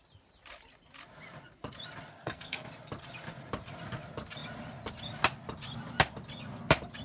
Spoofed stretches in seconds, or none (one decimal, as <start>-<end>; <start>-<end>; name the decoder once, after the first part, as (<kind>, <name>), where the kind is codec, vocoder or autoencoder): 2.1-2.7 (codec, SNAC)